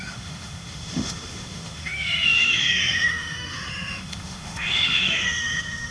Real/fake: fake